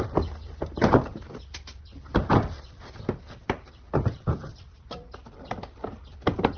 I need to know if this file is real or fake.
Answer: real